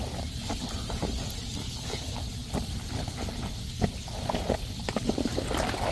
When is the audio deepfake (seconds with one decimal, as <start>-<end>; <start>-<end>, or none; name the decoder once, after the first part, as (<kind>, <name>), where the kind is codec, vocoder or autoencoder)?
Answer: 1.6-2.2 (codec, HILCodec)